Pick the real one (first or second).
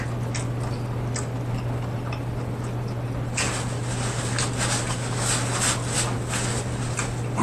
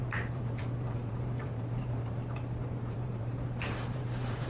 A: first